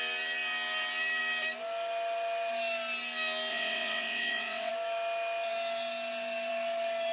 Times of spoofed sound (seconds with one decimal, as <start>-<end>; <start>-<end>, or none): 3.5-4.7